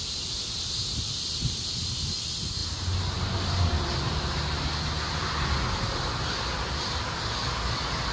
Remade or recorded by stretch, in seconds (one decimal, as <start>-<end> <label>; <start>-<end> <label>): 0.0-8.1 recorded